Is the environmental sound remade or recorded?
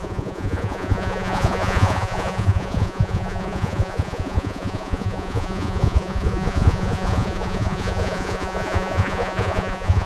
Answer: remade